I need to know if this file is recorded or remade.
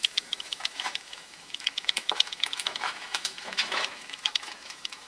remade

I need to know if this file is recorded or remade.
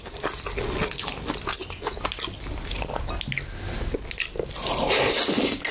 recorded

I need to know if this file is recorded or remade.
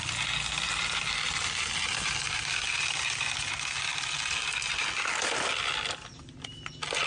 recorded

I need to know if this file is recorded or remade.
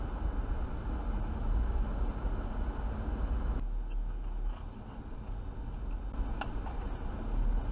recorded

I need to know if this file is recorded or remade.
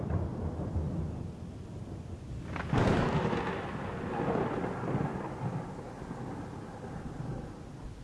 recorded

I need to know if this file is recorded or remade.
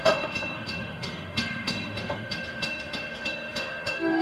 remade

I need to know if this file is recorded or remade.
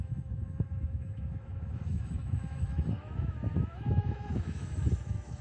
remade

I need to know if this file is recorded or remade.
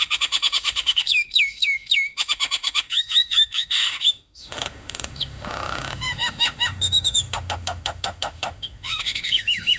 remade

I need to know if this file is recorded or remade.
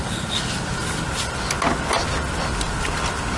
recorded